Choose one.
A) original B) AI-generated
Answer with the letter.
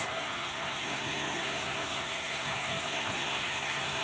B